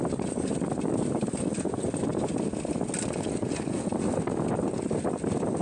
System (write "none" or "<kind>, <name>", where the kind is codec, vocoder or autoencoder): none